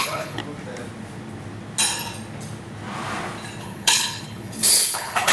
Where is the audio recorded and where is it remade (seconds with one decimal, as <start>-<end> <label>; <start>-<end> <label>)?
0.0-0.4 remade; 0.4-3.6 recorded; 3.6-5.3 remade